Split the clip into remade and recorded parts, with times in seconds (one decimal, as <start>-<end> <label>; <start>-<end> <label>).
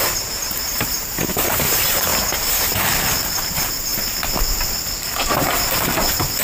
0.0-2.1 remade; 2.1-3.4 recorded; 3.4-3.9 remade; 3.9-5.3 recorded; 5.3-6.4 remade